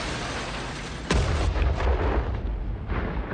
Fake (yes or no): no